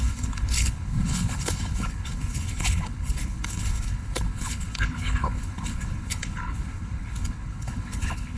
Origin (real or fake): fake